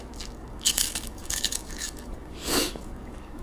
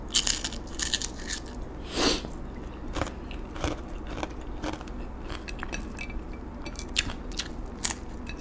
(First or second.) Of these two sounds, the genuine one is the second